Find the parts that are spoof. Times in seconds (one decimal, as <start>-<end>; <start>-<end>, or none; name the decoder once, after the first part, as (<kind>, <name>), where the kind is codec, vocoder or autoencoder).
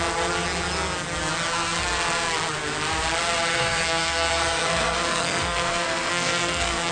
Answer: 3.5-6.9 (codec, SNAC)